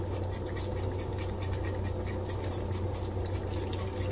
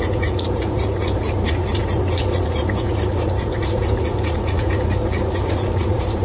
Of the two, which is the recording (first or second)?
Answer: first